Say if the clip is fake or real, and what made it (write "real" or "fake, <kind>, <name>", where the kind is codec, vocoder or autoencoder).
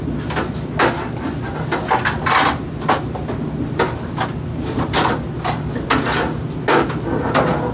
real